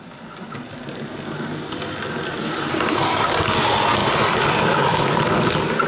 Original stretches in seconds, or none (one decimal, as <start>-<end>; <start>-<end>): 0.0-2.4; 3.4-4.0; 4.5-5.9